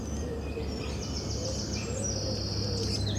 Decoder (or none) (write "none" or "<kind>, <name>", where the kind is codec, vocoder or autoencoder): none